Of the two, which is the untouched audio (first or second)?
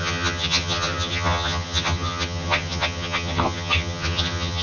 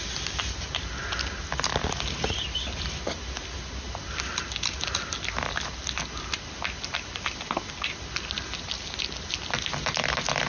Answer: second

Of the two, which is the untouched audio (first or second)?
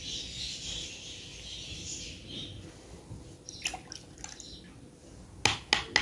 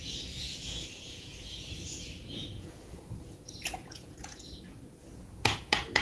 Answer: first